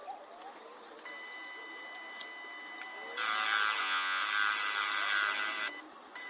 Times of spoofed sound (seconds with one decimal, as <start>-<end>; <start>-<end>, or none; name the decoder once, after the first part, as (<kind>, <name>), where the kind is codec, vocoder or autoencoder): 3.8-4.2 (vocoder, Vocos)